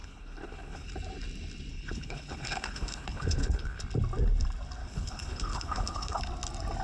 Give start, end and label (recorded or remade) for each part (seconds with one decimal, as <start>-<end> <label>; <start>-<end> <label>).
0.0-0.9 remade; 0.9-1.7 recorded; 1.7-3.8 remade; 3.8-4.8 recorded; 4.8-6.2 remade; 6.2-6.8 recorded